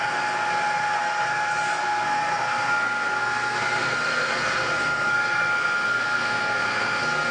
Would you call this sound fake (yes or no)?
yes